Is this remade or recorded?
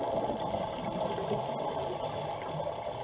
recorded